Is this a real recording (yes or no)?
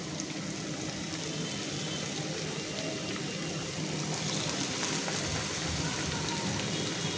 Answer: yes